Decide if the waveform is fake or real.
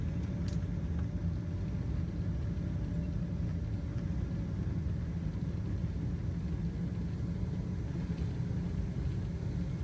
real